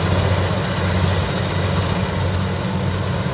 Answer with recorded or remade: recorded